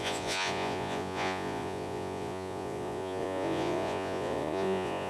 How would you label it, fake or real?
fake